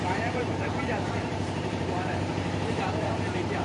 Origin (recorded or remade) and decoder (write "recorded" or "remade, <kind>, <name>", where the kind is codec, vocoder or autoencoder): remade, vocoder, BigVGAN v2